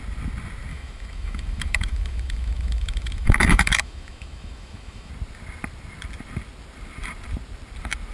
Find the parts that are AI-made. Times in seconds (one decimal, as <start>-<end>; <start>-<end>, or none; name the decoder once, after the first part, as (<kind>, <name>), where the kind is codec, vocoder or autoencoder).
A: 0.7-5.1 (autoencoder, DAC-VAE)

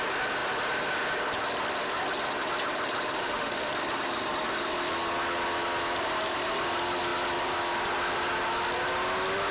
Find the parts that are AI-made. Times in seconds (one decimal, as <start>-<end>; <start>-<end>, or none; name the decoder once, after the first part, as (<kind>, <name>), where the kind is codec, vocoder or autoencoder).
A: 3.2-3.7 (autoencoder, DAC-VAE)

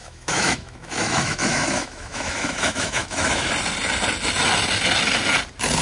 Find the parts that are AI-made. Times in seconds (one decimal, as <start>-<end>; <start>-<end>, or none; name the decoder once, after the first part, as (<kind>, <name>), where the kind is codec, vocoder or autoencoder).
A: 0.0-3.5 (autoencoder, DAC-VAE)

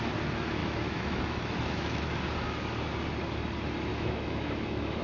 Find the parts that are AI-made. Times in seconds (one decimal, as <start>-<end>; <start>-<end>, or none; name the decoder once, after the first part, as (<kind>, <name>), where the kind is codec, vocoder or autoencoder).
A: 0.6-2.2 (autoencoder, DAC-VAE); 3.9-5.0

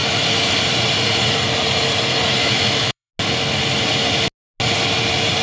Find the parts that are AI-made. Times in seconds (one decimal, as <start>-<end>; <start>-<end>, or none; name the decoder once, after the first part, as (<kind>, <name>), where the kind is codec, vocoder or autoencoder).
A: 0.0-0.5 (autoencoder, DAC-VAE); 2.4-3.1

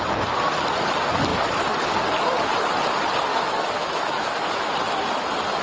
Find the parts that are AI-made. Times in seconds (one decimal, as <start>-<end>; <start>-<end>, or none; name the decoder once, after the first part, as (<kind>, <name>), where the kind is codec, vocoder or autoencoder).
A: 3.3-4.7 (autoencoder, DAC-VAE)